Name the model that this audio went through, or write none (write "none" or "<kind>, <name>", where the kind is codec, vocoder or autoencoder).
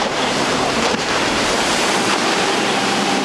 vocoder, BigVGAN v2